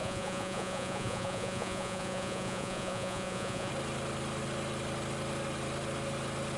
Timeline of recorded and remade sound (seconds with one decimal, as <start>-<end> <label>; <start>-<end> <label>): 0.0-3.7 remade; 3.7-6.6 recorded